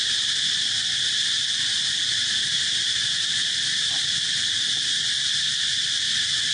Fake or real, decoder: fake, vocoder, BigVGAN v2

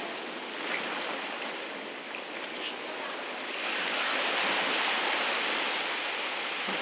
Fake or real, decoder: real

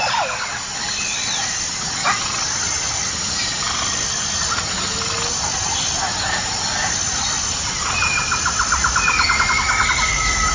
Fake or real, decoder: real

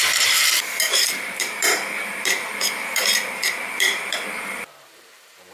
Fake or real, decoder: fake, vocoder, BigVGAN v2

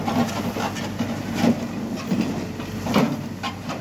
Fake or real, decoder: real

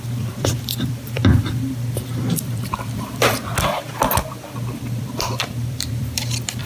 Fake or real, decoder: fake, vocoder, BigVGAN v2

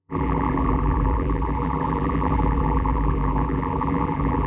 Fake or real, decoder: fake, vocoder, BigVGAN v2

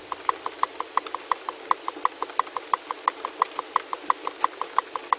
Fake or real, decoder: real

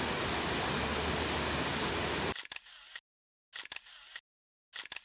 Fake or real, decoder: real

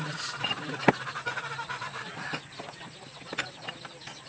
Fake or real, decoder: real